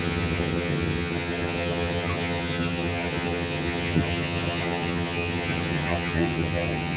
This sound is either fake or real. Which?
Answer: fake